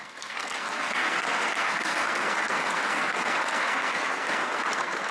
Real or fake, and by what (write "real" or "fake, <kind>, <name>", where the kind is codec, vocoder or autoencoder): fake, codec, SNAC